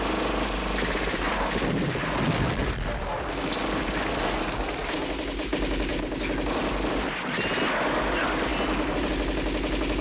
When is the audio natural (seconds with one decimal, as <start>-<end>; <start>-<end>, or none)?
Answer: 0.0-10.0